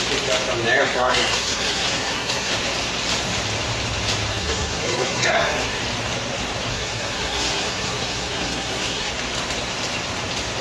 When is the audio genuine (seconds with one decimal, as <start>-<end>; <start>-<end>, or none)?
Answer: 0.0-0.8; 2.5-4.3; 5.8-6.7; 9.1-10.6